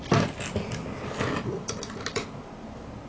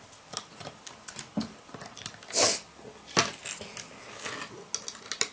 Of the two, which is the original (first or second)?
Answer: second